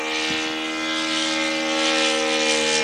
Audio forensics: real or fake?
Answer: real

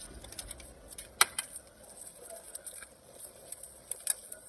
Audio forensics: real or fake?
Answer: real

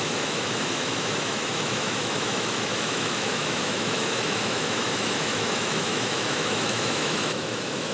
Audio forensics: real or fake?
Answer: fake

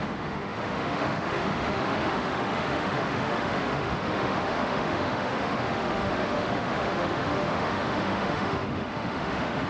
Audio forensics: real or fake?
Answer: fake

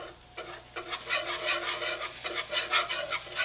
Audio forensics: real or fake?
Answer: real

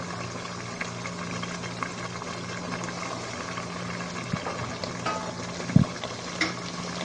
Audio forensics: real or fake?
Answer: real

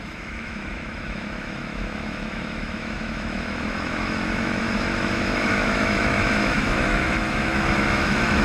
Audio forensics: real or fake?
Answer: fake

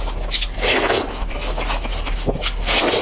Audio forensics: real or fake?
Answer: real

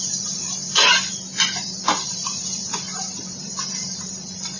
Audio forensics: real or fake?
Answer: real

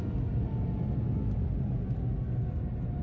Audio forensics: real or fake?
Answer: real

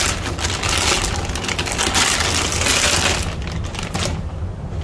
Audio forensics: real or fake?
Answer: real